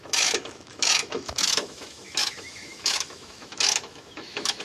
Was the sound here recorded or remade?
remade